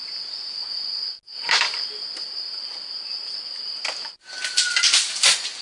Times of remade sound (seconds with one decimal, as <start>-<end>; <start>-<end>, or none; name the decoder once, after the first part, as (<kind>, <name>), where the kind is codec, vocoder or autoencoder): none